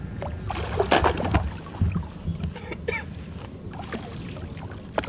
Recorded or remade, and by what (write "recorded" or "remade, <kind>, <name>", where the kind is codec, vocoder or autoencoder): recorded